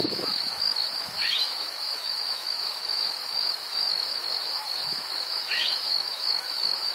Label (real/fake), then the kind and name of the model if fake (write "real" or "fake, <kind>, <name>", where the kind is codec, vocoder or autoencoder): fake, autoencoder, DAC-VAE